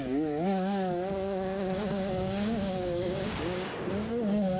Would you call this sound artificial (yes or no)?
yes